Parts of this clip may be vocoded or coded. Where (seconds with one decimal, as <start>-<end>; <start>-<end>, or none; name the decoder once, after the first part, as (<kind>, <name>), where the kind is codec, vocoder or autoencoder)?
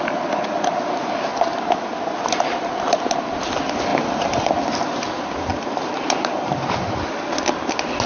3.9-4.5 (vocoder, BigVGAN v2); 5.5-7.0